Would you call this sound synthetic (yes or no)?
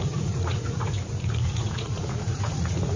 yes